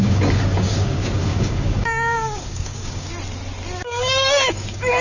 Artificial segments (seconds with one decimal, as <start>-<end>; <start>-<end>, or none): 0.0-3.1; 3.8-5.0